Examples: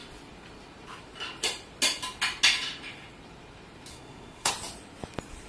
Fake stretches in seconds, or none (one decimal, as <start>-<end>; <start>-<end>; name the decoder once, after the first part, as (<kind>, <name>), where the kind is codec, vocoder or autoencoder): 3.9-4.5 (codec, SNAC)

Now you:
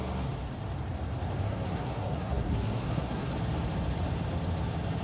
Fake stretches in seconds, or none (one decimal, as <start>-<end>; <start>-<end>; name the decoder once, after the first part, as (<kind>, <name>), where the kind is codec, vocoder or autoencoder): 1.4-3.3 (codec, SNAC)

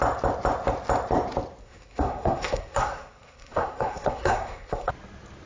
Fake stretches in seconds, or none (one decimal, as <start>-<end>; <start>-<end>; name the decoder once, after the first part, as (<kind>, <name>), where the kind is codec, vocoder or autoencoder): 1.6-4.9 (codec, SNAC)

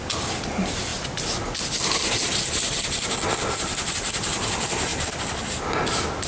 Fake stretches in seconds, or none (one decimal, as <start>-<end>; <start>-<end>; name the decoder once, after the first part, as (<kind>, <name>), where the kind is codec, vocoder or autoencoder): none

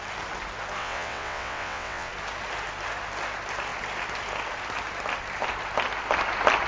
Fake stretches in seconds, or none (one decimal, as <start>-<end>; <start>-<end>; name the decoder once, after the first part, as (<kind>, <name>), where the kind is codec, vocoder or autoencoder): 0.8-2.1 (vocoder, WaveNeXt)

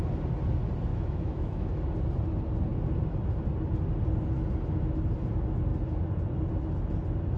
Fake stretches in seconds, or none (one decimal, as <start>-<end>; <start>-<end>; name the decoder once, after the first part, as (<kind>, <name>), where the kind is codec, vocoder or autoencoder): 0.9-1.8 (autoencoder, DAC-VAE)